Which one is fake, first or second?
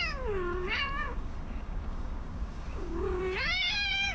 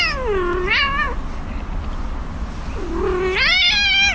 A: first